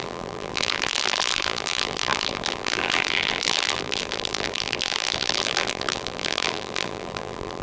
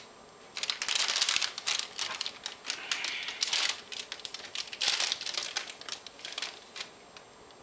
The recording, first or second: second